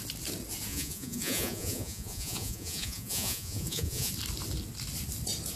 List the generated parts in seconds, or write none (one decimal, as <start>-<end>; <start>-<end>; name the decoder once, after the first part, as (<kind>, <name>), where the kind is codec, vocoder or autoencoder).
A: 0.7-4.1 (vocoder, Vocos)

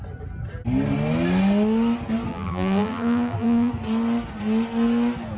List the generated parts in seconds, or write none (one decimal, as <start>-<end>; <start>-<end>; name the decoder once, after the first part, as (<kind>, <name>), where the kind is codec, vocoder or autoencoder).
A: 2.3-3.7 (vocoder, BigVGAN v2)